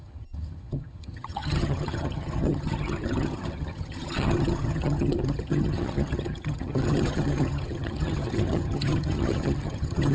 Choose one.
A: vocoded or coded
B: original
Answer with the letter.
A